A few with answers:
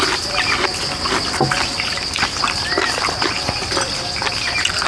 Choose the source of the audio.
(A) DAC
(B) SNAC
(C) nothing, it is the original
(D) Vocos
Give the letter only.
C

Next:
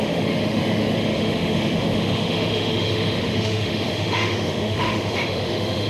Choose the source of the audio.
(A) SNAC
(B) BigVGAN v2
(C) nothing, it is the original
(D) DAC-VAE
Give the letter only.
D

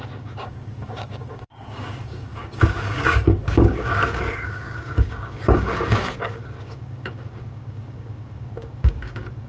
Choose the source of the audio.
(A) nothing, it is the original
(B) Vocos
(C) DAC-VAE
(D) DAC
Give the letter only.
D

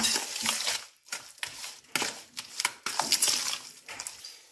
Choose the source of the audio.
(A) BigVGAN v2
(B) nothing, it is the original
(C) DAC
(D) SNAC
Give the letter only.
B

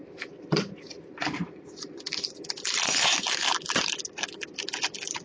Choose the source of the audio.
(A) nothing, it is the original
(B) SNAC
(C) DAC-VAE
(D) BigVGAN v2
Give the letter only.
A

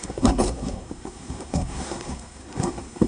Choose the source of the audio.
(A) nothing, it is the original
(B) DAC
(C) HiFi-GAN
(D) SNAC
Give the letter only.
D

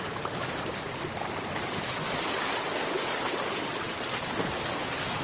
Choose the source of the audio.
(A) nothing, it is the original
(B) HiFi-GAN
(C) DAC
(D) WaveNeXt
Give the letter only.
A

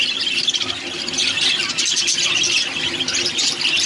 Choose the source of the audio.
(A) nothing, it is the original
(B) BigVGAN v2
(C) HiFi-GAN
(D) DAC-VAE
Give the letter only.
A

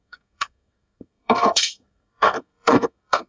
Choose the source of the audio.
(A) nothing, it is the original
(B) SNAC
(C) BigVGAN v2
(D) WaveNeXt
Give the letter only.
B